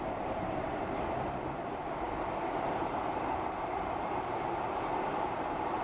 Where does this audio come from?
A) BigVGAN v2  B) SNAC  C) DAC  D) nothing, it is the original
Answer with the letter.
A